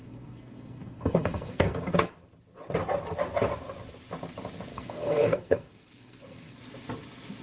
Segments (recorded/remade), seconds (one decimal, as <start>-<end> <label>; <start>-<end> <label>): 0.0-2.1 remade; 2.1-4.7 recorded; 4.7-6.6 remade; 6.6-7.4 recorded